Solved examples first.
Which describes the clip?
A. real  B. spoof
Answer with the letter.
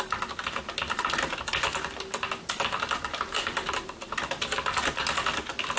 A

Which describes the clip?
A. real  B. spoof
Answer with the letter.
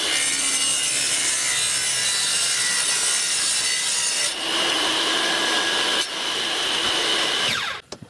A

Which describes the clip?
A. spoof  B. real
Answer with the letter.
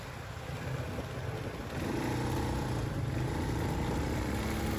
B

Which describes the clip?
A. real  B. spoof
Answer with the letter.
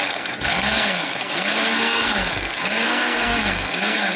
B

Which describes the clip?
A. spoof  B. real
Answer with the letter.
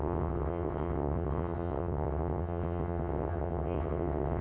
A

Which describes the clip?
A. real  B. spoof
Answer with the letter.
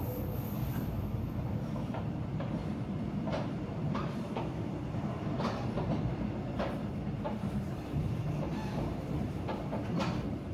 B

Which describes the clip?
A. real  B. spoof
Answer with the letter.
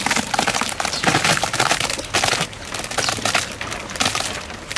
A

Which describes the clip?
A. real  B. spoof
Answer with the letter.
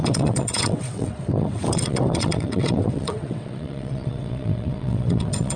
B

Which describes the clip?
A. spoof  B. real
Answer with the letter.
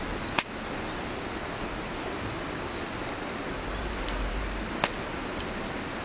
B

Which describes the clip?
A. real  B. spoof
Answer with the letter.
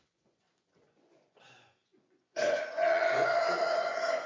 B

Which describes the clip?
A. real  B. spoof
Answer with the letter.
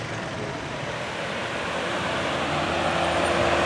B